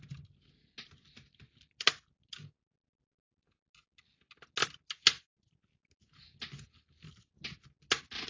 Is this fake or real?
real